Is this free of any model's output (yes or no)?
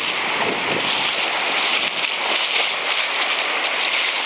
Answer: yes